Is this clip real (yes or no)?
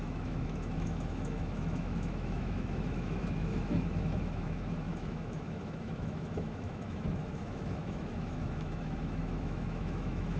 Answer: no